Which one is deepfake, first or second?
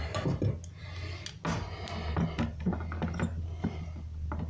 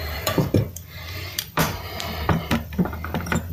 second